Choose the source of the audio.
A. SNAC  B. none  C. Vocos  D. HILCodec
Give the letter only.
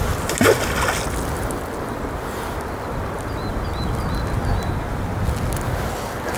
B